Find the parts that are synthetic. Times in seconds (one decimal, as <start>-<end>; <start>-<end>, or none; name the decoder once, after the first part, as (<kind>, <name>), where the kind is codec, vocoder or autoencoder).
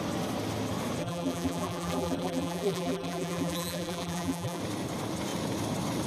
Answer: 1.0-4.6 (vocoder, BigVGAN v2)